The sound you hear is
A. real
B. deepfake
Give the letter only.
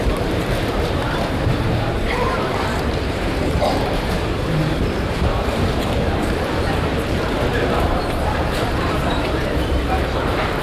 B